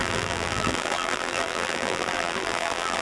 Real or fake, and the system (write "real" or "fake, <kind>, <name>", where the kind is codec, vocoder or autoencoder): fake, vocoder, BigVGAN v2